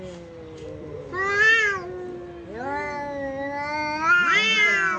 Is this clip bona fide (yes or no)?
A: yes